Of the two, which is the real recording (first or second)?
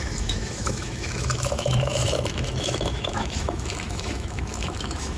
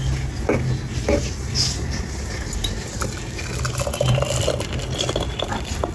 second